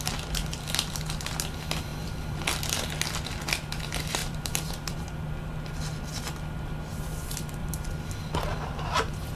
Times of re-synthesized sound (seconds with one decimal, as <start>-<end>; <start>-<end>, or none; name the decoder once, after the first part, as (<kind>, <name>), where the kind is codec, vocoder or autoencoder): 1.9-3.0 (vocoder, BigVGAN v2); 4.2-5.3; 7.6-8.3

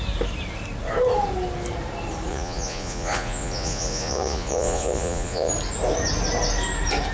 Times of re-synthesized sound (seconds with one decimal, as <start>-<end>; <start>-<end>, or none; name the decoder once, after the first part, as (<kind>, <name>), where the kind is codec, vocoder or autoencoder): 2.3-5.5 (vocoder, Vocos)

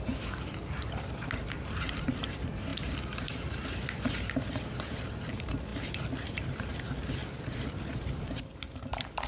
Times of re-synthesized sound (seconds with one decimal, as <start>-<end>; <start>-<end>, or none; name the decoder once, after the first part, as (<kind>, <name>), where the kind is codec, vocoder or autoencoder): 0.0-9.3 (vocoder, BigVGAN v2)

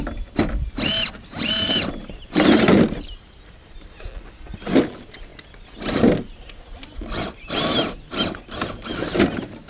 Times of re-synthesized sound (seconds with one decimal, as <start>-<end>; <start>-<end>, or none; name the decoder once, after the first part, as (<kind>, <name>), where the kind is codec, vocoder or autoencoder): 1.2-3.9 (vocoder, BigVGAN v2)

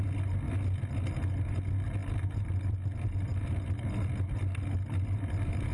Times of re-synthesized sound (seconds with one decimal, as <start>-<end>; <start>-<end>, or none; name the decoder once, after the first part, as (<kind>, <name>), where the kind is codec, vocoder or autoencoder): none

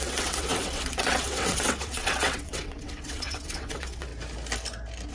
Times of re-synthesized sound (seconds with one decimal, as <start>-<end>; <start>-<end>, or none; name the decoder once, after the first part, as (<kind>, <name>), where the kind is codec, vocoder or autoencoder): 0.0-4.1 (vocoder, WaveNeXt)